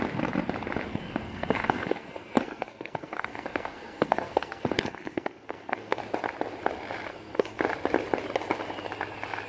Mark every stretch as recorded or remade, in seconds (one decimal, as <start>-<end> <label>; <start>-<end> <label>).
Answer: 0.0-0.9 recorded; 0.9-6.0 remade; 6.0-7.1 recorded; 7.1-7.6 remade; 7.6-9.5 recorded